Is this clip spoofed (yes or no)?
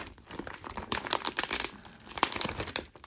yes